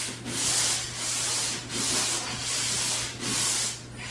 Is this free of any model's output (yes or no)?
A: yes